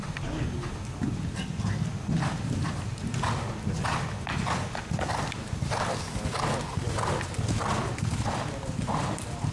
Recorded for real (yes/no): yes